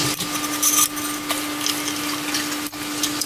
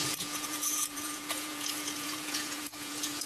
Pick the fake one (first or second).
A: second